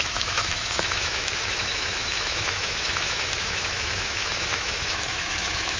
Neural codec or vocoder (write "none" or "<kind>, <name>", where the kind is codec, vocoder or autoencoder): autoencoder, DAC-VAE